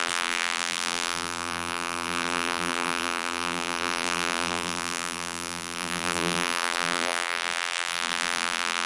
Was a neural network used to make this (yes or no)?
yes